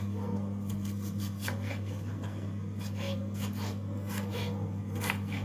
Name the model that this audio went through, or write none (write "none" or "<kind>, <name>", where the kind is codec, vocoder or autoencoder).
codec, SNAC